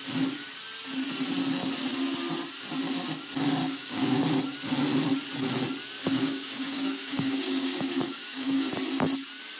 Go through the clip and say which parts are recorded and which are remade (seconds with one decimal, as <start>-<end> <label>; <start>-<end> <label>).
0.0-3.6 recorded; 3.6-4.2 remade; 4.2-6.0 recorded; 6.0-8.7 remade; 8.7-9.6 recorded